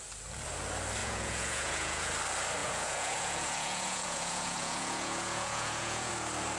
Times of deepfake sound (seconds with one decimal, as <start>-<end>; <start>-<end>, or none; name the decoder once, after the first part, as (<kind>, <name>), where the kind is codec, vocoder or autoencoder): 1.0-2.1 (vocoder, Vocos); 2.6-6.1

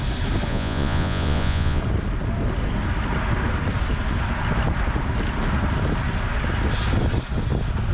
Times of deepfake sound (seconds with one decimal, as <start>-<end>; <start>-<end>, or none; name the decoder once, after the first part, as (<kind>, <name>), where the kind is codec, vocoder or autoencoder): 0.5-1.8 (vocoder, Vocos)

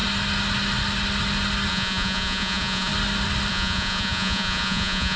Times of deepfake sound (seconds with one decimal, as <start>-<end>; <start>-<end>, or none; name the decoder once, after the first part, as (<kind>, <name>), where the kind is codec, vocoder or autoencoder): 1.7-2.9 (vocoder, Vocos); 3.5-5.2